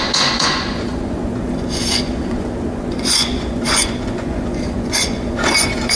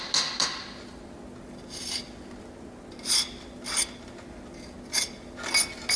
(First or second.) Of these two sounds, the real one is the second